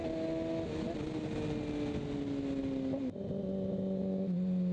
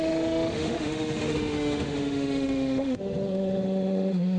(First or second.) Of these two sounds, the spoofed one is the second